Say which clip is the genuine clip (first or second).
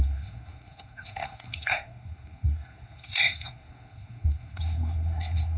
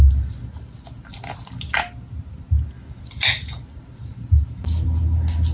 second